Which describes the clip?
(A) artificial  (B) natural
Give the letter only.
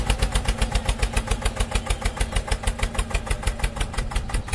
B